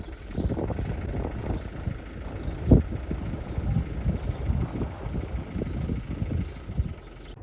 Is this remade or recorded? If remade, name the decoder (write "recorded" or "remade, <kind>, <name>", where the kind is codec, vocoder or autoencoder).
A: recorded